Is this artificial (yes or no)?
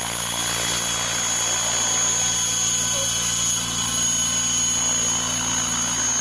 no